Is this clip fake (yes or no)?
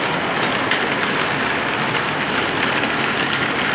no